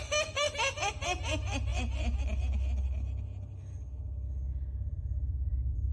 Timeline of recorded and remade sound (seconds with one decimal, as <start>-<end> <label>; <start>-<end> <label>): 0.0-5.9 recorded